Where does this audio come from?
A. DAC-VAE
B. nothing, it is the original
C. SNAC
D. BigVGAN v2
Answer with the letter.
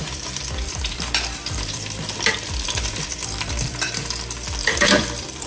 D